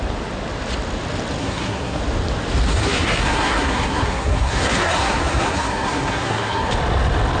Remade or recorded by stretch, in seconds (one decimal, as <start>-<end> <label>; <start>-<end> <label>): 0.0-1.4 recorded; 1.4-2.0 remade; 2.0-2.7 recorded; 2.7-6.7 remade; 6.7-7.4 recorded